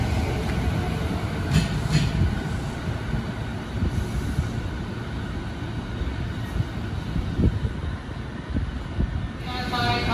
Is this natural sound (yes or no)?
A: yes